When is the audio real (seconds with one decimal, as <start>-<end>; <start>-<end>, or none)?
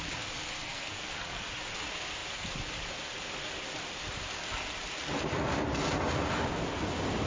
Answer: 0.0-0.6; 1.5-7.3